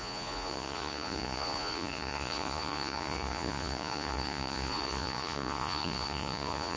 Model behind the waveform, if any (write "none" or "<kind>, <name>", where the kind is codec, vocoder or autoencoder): vocoder, Vocos